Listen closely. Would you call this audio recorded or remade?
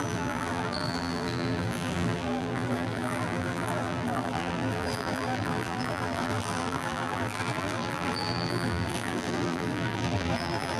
remade